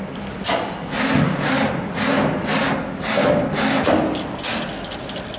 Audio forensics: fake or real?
real